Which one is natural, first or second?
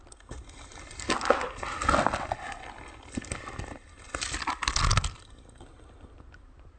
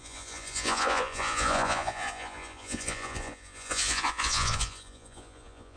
first